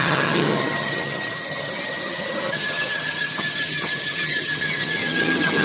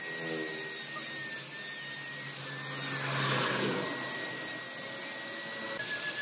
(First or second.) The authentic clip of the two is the second